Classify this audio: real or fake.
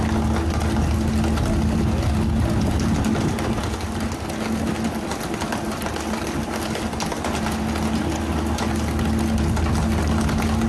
real